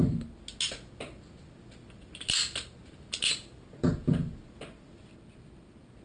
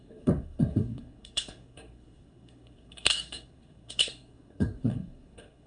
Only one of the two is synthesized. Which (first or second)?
second